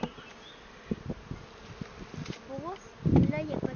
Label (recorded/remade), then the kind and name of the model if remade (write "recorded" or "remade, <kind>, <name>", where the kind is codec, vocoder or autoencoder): recorded